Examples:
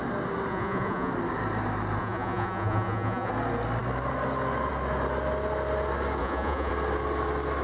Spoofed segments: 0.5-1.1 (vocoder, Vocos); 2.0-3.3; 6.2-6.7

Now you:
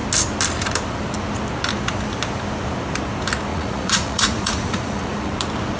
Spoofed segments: 3.5-5.3 (vocoder, Vocos)

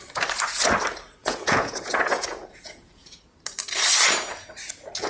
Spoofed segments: 1.2-3.2 (vocoder, Vocos)

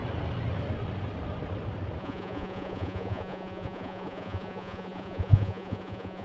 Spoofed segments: 2.0-6.2 (vocoder, Vocos)